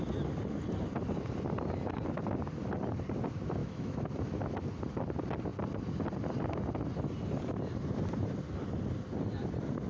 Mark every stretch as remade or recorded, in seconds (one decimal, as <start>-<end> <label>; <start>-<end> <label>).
0.0-3.6 recorded; 3.6-4.1 remade; 4.1-9.9 recorded